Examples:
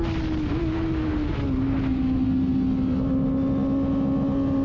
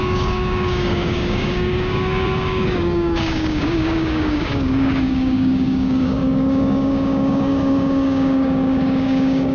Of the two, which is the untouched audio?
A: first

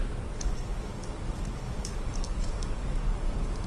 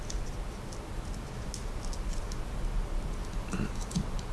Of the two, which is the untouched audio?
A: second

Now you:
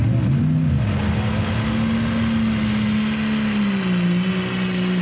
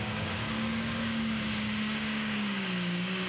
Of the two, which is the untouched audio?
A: first